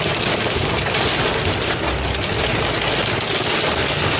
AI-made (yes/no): no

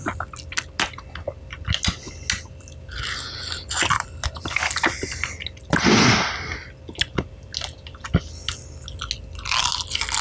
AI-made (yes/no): no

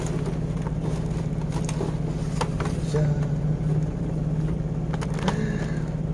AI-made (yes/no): no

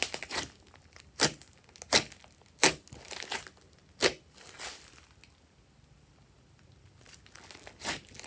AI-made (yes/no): no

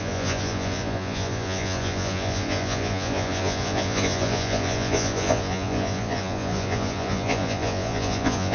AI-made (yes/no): yes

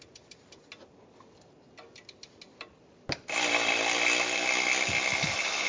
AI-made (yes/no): no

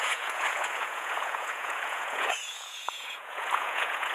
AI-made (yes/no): yes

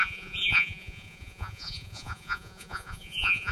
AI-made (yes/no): yes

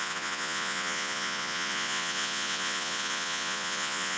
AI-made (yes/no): yes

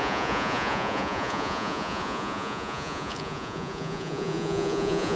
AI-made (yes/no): yes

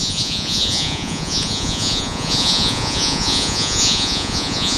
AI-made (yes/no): yes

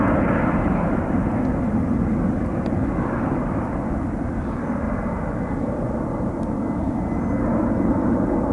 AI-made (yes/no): no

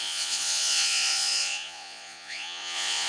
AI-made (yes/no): yes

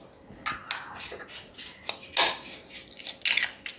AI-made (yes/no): no